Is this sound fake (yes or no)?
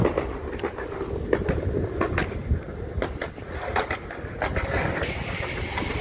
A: no